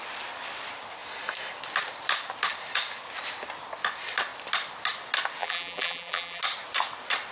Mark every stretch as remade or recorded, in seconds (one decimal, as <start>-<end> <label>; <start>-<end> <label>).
0.0-5.4 recorded; 5.4-6.4 remade; 6.4-7.3 recorded